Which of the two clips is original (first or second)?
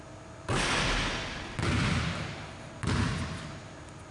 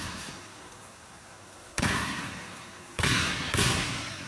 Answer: first